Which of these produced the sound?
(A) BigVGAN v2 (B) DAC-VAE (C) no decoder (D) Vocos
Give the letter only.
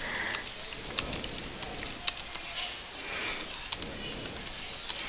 C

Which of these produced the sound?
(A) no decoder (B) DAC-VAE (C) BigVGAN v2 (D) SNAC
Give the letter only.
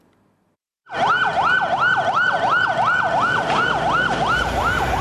A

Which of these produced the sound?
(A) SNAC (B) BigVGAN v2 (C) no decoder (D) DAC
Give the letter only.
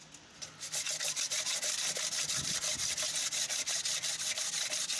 C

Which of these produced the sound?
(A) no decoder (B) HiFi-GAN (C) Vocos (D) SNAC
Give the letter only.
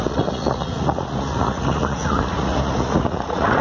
C